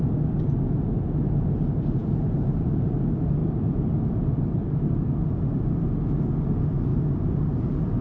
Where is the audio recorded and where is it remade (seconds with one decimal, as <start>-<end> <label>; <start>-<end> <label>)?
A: 0.0-2.0 recorded; 2.0-2.9 remade; 2.9-8.0 recorded